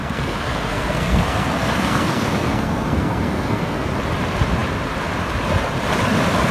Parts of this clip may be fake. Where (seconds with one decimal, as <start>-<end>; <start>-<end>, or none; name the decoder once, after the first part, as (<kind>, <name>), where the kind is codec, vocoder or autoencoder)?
0.0-3.9 (codec, SNAC)